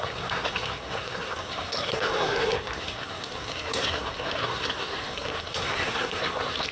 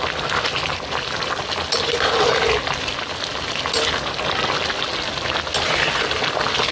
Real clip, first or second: second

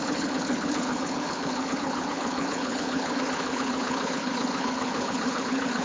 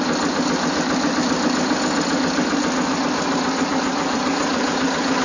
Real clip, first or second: second